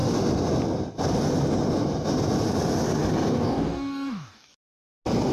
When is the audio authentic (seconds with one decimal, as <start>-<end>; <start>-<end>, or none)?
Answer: 0.0-3.3; 4.8-5.3